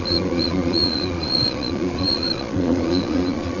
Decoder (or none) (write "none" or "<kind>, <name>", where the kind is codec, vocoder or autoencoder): vocoder, Vocos